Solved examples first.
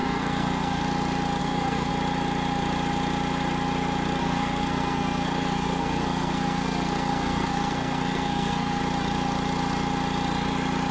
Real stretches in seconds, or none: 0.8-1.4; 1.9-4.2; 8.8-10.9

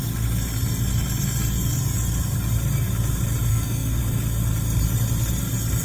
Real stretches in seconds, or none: 0.0-3.5; 4.0-5.8

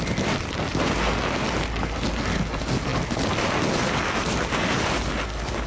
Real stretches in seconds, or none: 0.0-5.7

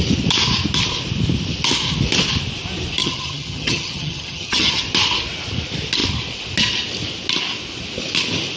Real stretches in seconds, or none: 0.0-3.0; 4.8-8.6

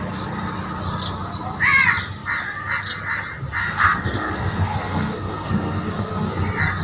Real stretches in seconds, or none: 0.0-3.6; 6.3-6.8